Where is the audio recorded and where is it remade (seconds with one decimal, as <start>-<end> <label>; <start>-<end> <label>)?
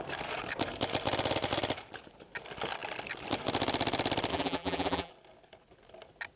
0.0-4.3 recorded; 4.3-5.1 remade; 5.1-6.4 recorded